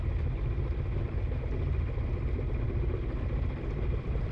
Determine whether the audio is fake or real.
fake